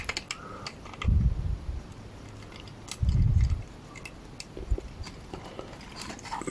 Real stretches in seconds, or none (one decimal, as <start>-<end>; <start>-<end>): 0.0-6.5